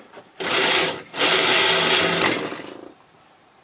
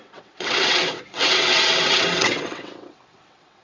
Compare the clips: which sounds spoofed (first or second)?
second